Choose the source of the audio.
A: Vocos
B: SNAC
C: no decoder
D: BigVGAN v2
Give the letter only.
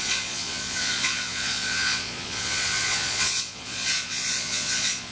A